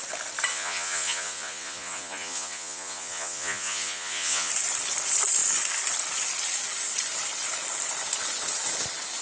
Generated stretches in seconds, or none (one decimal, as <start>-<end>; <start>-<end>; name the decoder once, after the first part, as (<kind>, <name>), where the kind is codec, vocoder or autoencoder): 0.5-4.5 (vocoder, Vocos)